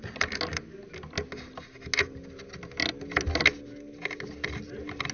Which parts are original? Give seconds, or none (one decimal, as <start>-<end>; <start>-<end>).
0.0-5.1